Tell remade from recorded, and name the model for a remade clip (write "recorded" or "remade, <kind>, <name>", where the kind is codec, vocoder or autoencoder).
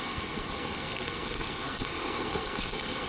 remade, codec, SNAC